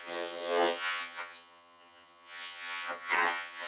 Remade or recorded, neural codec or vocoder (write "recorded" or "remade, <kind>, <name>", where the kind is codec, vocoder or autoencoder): remade, vocoder, HiFi-GAN